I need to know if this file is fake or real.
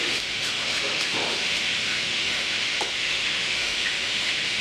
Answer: fake